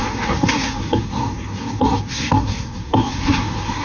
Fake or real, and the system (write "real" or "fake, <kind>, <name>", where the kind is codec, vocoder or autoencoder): fake, codec, SNAC